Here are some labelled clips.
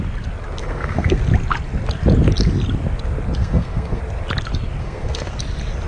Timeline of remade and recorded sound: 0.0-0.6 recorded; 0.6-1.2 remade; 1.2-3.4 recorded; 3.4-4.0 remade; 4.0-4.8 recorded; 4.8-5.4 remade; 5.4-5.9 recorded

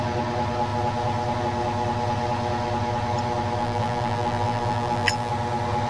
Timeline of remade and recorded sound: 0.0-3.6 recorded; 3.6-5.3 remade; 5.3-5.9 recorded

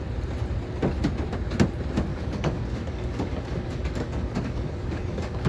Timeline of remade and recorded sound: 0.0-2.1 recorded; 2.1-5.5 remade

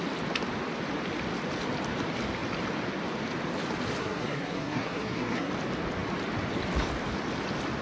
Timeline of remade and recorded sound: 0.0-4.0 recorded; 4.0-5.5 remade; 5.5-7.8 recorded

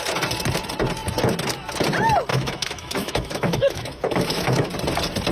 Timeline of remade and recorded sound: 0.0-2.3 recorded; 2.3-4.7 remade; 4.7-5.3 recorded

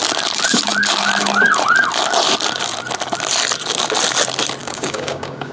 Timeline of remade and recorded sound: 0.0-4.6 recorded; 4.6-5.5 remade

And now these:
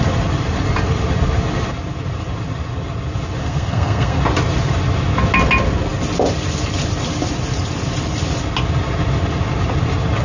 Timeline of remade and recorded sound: 0.0-3.4 recorded; 3.4-4.2 remade; 4.2-10.2 recorded

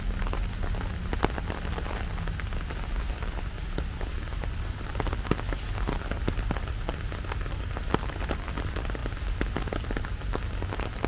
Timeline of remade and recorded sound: 0.0-11.1 recorded